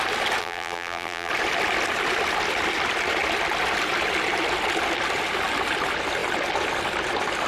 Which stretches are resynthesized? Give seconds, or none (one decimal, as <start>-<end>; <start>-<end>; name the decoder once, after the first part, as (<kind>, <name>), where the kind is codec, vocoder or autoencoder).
0.4-1.3 (vocoder, BigVGAN v2)